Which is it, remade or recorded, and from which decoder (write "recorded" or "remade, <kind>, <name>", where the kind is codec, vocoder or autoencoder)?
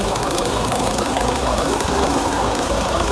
remade, codec, SNAC